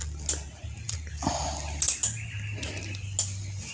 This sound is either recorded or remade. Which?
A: recorded